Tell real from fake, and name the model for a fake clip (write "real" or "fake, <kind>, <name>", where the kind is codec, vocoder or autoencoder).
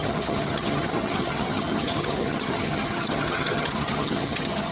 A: fake, vocoder, HiFi-GAN